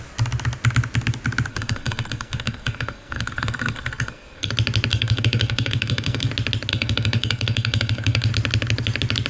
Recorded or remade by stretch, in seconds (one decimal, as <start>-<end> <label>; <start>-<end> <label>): 0.0-1.5 recorded; 1.5-4.5 remade; 4.5-4.9 recorded; 4.9-6.3 remade; 6.3-6.7 recorded; 6.7-8.3 remade; 8.3-9.3 recorded